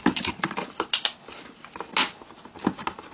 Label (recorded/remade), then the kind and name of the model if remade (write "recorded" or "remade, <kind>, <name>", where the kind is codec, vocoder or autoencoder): recorded